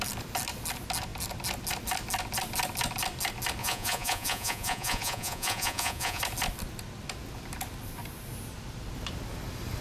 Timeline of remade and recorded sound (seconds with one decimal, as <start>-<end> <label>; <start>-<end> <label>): 0.0-3.6 recorded; 3.6-6.2 remade; 6.2-9.8 recorded